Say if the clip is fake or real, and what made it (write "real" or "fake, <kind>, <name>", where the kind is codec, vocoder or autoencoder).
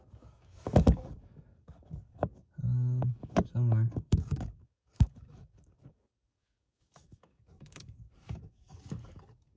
fake, codec, DAC